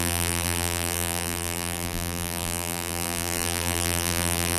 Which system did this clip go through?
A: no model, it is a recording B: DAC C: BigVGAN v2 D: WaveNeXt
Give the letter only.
C